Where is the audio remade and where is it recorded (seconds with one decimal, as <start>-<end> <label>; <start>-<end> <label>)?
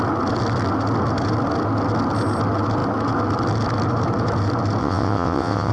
0.0-4.8 recorded; 4.8-5.7 remade